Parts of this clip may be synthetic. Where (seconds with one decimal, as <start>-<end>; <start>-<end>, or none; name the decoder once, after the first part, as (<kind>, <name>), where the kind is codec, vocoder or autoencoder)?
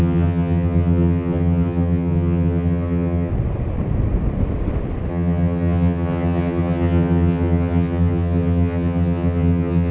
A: 0.0-3.3 (vocoder, HiFi-GAN); 5.1-9.9